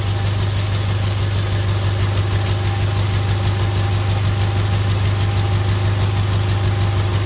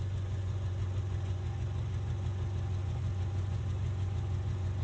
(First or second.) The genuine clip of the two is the first